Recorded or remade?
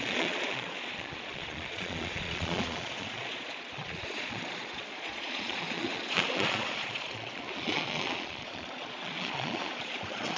remade